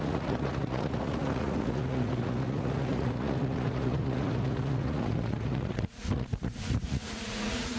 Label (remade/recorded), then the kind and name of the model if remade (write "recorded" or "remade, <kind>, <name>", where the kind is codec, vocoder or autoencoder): remade, vocoder, Vocos